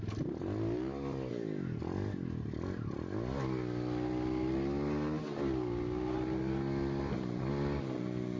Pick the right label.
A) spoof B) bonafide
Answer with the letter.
B